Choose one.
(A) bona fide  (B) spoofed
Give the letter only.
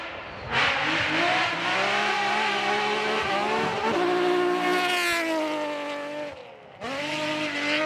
A